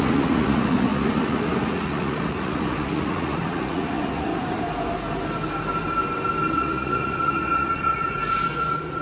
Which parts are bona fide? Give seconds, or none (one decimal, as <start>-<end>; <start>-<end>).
4.3-6.5